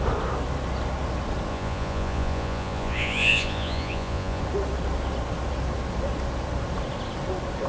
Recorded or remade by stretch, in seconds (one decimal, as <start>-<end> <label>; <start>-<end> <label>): 0.0-1.5 recorded; 1.5-4.4 remade; 4.4-7.7 recorded